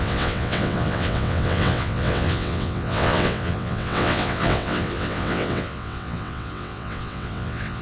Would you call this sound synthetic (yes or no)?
yes